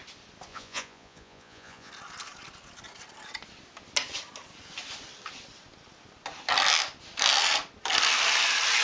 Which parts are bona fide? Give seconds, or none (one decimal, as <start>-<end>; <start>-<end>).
0.0-0.5; 1.9-8.8